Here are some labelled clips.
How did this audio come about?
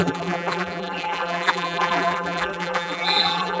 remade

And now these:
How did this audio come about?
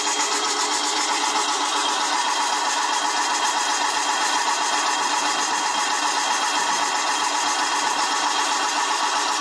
recorded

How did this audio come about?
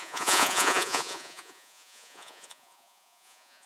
remade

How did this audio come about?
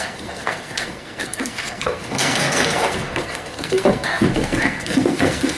remade